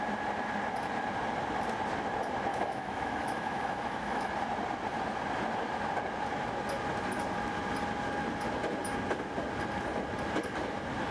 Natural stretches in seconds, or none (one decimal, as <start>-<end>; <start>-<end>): 0.0-2.5; 4.3-11.1